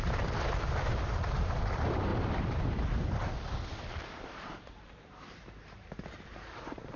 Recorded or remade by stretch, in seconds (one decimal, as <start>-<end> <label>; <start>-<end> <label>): 0.0-2.1 remade; 2.1-3.9 recorded; 3.9-7.0 remade